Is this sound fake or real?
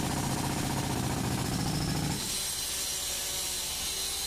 real